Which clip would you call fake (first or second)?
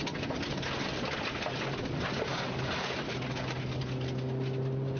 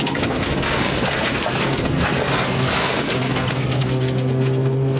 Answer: second